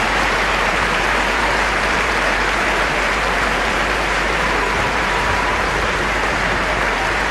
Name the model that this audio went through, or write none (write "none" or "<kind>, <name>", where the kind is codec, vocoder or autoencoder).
vocoder, BigVGAN v2